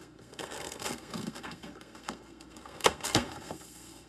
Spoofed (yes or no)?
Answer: yes